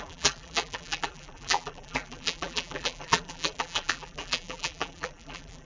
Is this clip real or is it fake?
fake